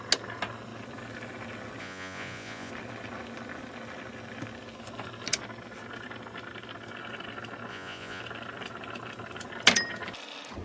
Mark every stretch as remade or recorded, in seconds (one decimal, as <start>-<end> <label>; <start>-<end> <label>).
0.0-1.8 recorded; 1.8-2.7 remade; 2.7-7.7 recorded; 7.7-8.2 remade; 8.2-10.6 recorded